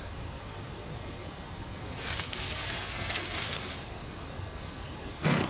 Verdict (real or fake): fake